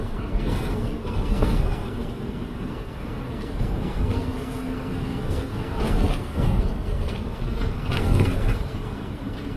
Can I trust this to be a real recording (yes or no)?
no